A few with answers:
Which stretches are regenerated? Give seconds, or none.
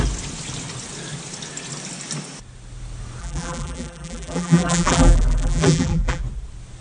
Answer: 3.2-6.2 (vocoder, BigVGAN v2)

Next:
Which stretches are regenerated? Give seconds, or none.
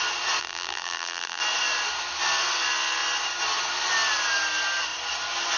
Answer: 0.4-1.4 (vocoder, BigVGAN v2)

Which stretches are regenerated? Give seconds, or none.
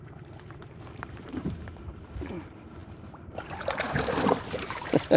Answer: 0.0-5.2 (vocoder, BigVGAN v2)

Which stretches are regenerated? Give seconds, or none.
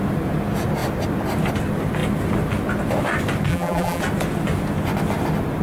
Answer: 3.5-4.0 (vocoder, BigVGAN v2)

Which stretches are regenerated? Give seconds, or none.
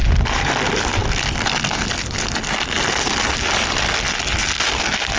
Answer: 0.0-0.5 (vocoder, BigVGAN v2)